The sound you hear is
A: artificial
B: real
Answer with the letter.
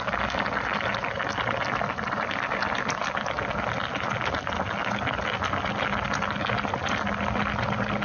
B